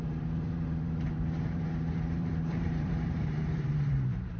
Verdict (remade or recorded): remade